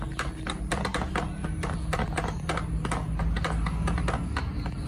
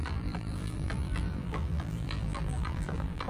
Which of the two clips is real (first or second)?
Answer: first